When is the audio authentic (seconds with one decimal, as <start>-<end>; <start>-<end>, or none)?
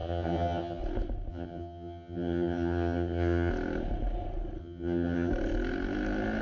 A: 0.8-1.3; 3.5-4.6; 5.3-6.4